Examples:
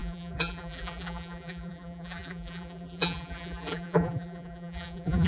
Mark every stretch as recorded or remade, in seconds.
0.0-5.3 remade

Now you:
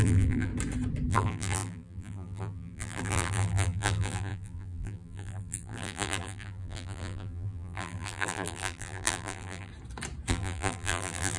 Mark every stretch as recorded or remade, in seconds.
0.0-0.5 remade; 0.5-1.1 recorded; 1.1-9.7 remade; 9.7-10.3 recorded; 10.3-11.4 remade

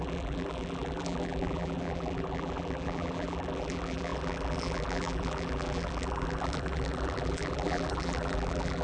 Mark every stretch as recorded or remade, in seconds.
0.0-8.8 remade